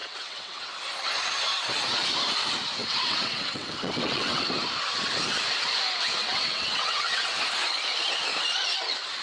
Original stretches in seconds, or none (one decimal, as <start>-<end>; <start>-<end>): 0.7-2.8; 4.4-6.2; 7.4-9.2